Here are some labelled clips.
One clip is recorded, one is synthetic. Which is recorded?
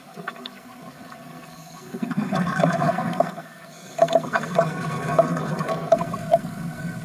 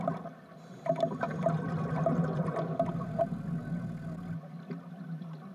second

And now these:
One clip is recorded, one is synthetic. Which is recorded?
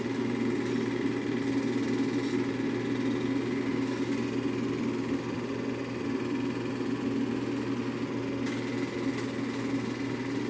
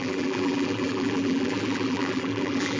first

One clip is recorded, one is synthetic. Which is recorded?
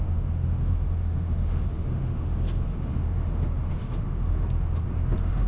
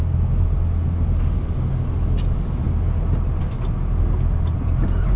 second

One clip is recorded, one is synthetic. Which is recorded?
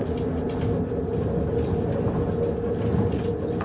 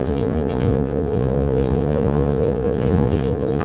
first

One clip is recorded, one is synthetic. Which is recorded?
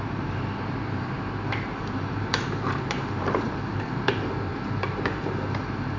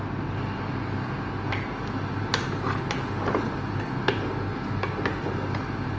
second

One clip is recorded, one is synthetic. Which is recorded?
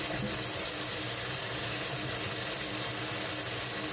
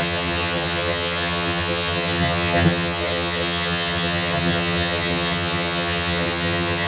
first